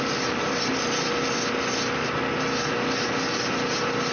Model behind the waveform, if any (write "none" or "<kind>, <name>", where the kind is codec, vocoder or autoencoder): none